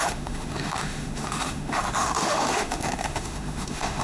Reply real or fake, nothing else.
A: fake